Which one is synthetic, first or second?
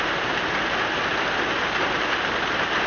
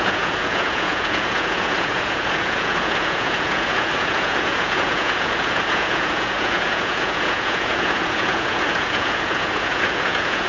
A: second